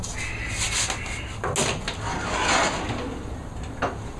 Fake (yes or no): no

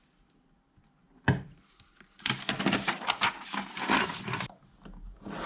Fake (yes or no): no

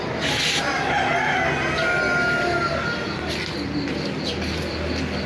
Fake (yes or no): no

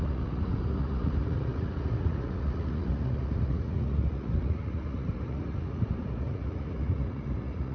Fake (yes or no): yes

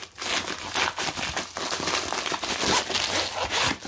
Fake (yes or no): no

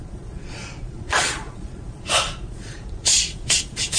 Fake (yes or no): yes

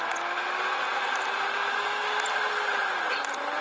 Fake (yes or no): no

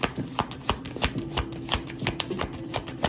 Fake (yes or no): no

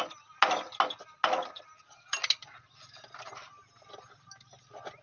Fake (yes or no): no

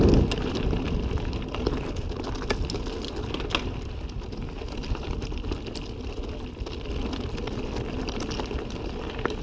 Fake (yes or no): no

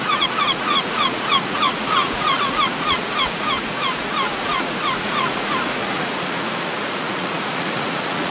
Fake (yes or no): yes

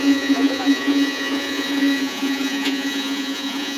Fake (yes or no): yes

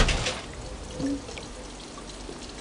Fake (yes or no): no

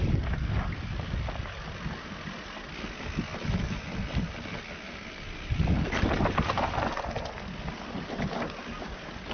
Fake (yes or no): no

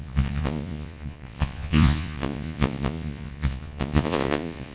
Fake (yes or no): yes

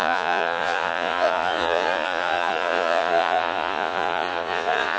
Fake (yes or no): yes